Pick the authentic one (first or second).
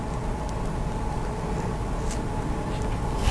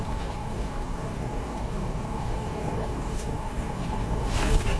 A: first